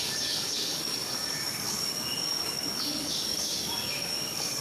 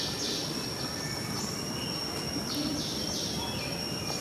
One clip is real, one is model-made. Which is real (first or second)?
second